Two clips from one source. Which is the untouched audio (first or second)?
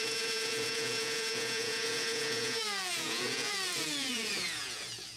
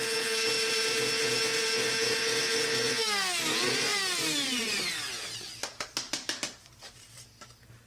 second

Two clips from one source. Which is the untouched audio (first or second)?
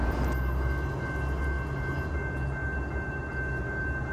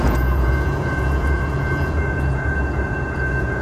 first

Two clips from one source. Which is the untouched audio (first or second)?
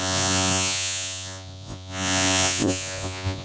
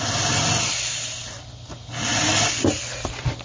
second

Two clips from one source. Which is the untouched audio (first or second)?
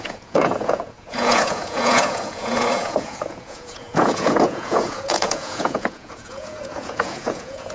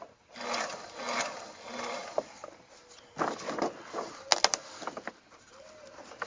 second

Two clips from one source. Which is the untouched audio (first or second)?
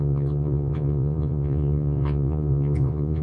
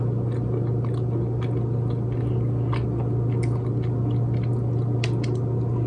second